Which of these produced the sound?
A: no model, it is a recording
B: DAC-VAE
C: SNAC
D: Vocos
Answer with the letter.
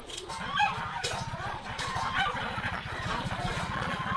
D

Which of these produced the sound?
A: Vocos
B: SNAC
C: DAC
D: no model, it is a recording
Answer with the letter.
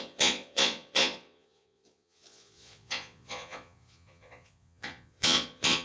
A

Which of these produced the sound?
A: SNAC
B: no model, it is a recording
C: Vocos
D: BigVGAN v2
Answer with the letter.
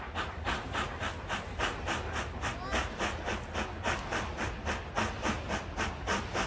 B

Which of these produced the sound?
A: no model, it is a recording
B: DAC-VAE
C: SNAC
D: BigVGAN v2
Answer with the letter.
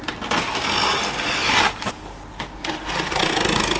A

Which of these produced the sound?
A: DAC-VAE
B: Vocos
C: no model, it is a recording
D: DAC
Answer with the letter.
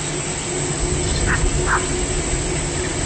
C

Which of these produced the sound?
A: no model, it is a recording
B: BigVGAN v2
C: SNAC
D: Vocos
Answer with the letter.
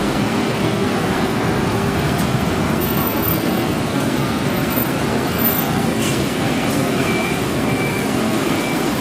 C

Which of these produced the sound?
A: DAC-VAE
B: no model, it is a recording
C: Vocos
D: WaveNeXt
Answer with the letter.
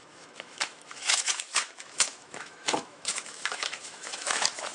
A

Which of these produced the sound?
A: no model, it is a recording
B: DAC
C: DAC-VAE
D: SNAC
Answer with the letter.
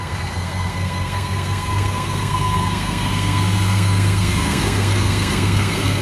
D